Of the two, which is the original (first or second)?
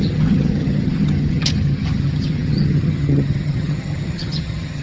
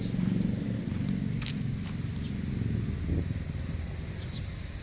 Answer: second